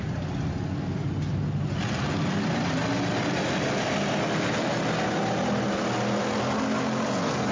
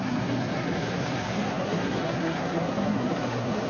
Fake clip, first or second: second